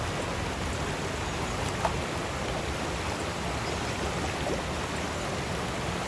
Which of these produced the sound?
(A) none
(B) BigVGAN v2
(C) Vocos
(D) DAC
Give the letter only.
A